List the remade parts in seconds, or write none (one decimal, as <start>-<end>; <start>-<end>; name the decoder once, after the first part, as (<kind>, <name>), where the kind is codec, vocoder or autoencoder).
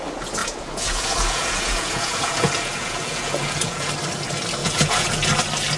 0.4-3.9 (vocoder, Vocos); 4.6-5.3